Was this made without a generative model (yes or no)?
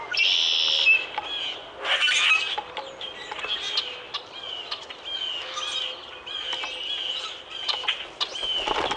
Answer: yes